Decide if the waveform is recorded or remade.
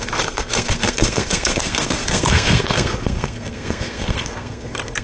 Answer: remade